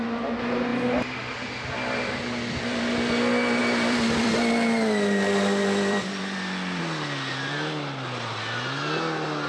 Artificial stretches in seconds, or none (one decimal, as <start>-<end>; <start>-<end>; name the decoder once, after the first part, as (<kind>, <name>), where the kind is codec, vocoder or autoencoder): 0.7-2.8 (vocoder, BigVGAN v2); 3.6-6.8